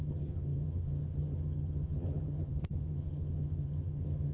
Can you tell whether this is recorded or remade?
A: remade